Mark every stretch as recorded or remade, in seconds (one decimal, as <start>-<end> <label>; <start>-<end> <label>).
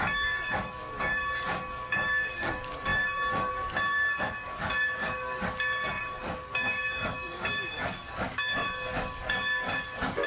0.0-10.3 remade